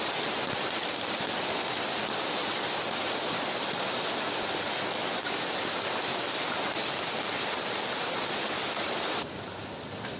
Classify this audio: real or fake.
real